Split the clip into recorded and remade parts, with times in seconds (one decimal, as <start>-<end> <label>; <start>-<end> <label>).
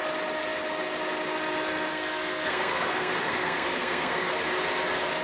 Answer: 0.0-1.9 recorded; 1.9-4.3 remade; 4.3-5.2 recorded